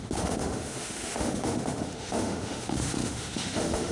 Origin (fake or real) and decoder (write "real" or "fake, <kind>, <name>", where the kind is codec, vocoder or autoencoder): fake, autoencoder, DAC-VAE